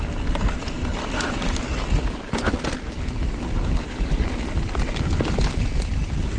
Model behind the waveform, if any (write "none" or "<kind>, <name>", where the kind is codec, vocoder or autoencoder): none